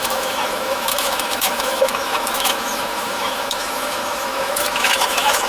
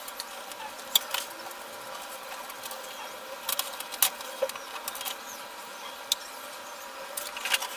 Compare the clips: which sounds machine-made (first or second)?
first